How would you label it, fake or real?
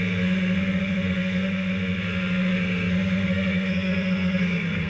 fake